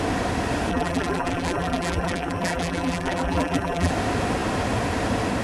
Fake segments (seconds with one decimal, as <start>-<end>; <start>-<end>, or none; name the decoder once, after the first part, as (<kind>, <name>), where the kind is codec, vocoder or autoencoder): 0.7-3.9 (vocoder, BigVGAN v2)

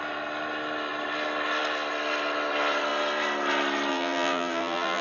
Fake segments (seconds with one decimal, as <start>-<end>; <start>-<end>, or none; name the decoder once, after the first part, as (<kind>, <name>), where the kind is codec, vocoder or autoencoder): 3.9-5.0 (vocoder, BigVGAN v2)

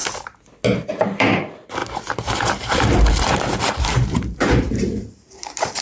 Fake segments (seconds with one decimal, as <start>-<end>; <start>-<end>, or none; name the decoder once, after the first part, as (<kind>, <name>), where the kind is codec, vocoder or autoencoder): 0.9-5.8 (vocoder, BigVGAN v2)

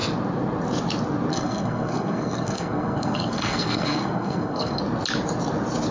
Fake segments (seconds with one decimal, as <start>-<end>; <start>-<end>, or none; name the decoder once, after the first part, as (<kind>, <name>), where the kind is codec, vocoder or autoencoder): 1.3-4.8 (codec, SNAC)

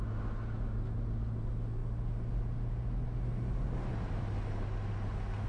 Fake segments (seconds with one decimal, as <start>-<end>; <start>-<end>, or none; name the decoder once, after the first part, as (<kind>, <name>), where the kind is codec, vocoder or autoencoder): none

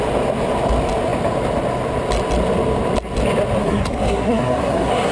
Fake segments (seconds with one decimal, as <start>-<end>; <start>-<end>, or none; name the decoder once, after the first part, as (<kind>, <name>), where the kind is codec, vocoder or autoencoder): 3.6-5.1 (codec, SNAC)

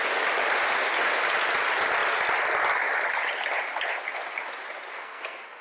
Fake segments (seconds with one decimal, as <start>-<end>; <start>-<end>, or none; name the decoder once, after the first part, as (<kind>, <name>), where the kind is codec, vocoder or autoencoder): 5.0-5.6 (codec, SNAC)